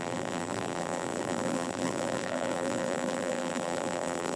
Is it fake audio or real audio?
fake